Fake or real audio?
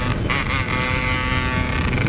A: real